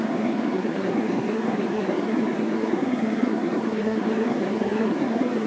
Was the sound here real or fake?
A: fake